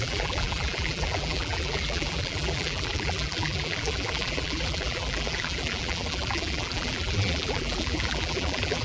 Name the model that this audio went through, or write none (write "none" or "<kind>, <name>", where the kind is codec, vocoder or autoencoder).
vocoder, BigVGAN v2